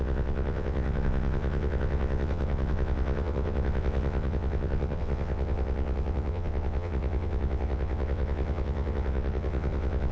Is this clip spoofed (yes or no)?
yes